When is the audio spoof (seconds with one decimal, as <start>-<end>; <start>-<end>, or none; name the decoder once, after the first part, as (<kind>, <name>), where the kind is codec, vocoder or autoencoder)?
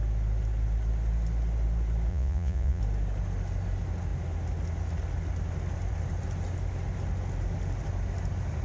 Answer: 2.1-2.8 (vocoder, Vocos)